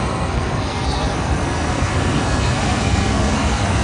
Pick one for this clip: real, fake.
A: fake